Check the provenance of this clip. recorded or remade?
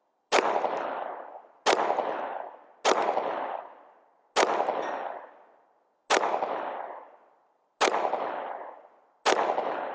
recorded